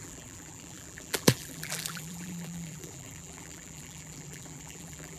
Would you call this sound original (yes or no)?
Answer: no